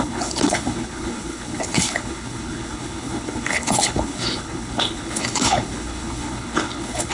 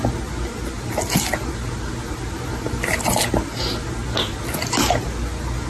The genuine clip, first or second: second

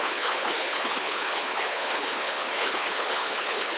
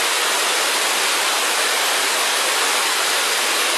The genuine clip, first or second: second